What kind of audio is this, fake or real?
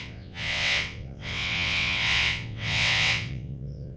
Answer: fake